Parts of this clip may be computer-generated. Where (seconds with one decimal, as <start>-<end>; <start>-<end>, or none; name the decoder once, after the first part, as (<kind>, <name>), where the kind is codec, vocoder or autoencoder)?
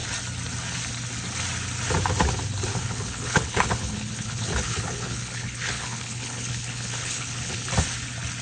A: 2.7-7.7 (codec, HILCodec)